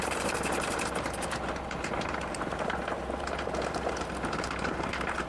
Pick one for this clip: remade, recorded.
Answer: remade